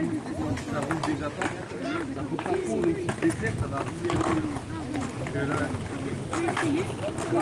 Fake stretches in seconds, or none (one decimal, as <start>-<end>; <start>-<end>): none